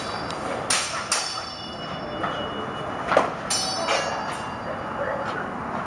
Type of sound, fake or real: real